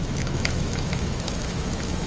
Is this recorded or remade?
remade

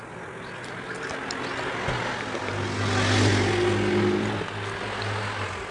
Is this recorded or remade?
recorded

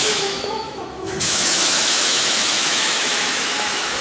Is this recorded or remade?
remade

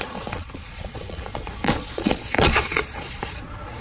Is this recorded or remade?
remade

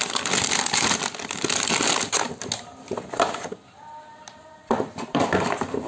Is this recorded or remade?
recorded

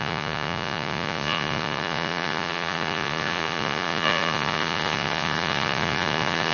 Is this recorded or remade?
remade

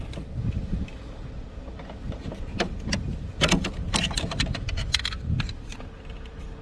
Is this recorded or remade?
recorded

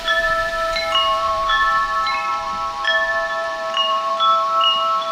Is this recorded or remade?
remade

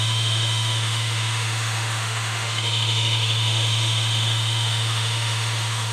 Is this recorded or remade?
remade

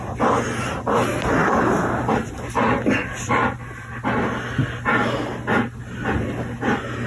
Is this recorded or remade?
recorded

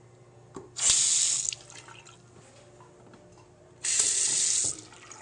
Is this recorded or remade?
recorded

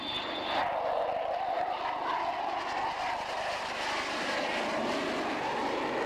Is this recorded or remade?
recorded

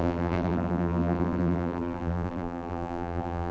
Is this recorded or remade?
remade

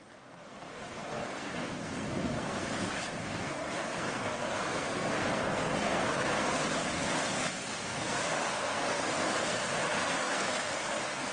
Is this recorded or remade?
remade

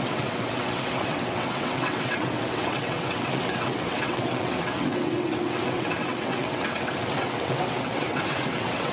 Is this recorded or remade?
remade